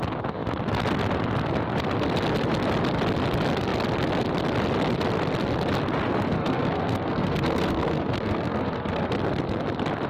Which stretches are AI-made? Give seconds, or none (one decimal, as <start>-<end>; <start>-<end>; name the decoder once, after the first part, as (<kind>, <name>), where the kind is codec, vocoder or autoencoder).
6.4-9.1 (codec, SNAC)